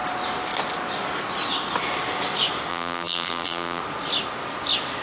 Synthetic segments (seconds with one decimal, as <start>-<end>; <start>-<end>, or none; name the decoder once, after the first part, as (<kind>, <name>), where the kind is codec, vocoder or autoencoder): 2.7-3.8 (vocoder, BigVGAN v2)